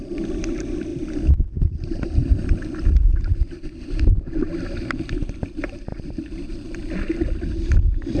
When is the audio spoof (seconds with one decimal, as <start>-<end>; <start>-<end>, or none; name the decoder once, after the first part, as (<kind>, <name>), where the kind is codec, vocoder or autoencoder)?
none